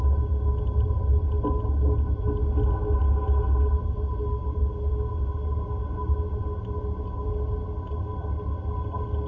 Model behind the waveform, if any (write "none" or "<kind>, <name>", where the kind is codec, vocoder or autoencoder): none